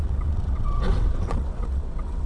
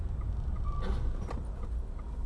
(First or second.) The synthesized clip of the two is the first